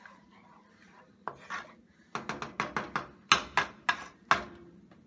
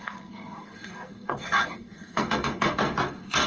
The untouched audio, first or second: first